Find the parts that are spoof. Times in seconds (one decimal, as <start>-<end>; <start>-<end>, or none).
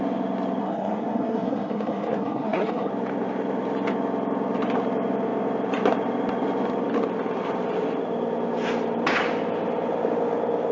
0.6-2.9